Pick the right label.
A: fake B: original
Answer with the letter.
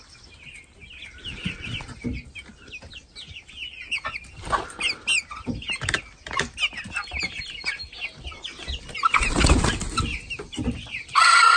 B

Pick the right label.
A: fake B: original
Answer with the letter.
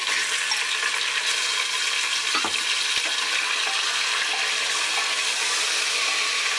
B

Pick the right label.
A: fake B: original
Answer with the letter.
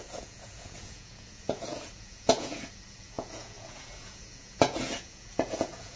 A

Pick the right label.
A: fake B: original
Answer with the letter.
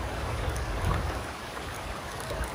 A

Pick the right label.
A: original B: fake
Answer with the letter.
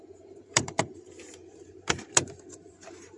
B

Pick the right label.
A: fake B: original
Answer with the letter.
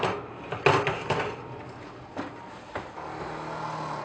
B